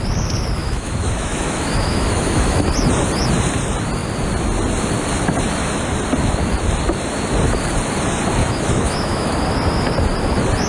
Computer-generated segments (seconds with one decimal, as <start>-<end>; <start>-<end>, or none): 0.6-2.7; 8.4-9.3